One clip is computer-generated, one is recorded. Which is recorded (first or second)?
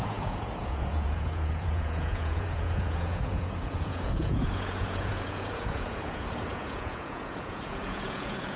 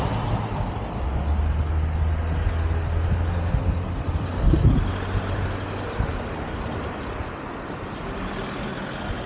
second